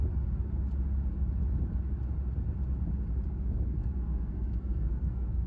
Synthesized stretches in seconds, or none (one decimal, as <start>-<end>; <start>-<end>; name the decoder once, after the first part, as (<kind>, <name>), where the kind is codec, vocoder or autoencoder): 3.3-5.5 (codec, SNAC)